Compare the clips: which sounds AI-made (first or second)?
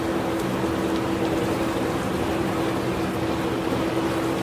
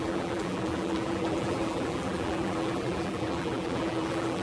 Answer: second